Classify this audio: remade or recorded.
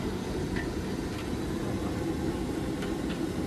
recorded